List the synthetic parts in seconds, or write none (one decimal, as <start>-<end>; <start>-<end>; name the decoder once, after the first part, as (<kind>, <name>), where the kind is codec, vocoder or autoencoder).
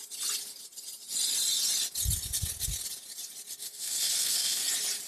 3.6-4.6 (codec, SNAC)